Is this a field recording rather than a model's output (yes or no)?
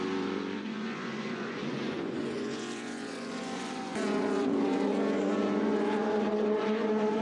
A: no